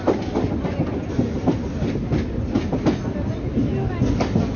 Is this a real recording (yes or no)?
yes